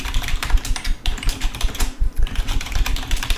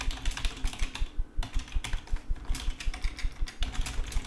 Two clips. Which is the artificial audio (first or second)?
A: first